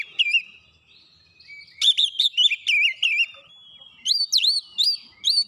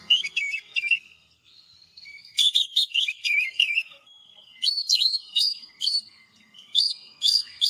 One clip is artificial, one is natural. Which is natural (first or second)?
first